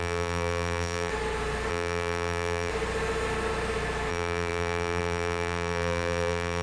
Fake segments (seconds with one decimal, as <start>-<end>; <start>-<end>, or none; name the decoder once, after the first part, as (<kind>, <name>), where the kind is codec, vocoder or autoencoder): 0.0-1.1 (vocoder, BigVGAN v2); 1.7-2.7; 4.1-6.6